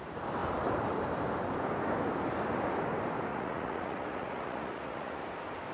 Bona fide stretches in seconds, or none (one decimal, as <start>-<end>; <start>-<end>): 0.0-3.3; 5.2-5.7